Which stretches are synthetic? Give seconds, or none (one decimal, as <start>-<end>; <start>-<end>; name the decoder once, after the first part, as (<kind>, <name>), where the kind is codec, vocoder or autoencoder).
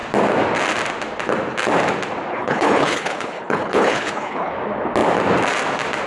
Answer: 2.3-4.5 (codec, HILCodec)